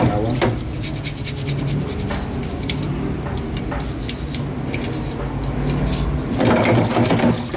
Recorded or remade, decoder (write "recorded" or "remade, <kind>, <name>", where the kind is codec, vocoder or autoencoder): recorded